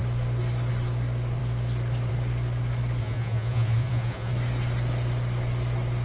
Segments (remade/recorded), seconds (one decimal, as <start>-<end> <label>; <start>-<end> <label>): 0.0-3.0 recorded; 3.0-4.3 remade; 4.3-6.0 recorded